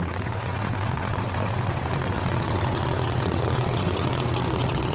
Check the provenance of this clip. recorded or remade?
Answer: remade